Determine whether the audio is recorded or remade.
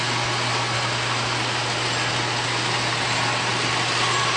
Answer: recorded